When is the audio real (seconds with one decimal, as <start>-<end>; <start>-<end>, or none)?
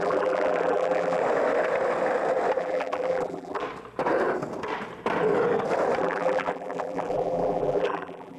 1.2-2.6; 3.6-6.0